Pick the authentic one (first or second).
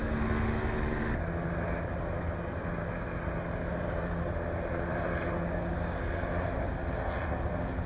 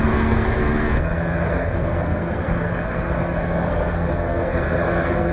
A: first